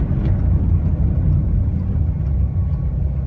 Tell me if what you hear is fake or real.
real